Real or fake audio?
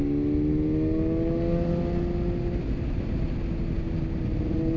real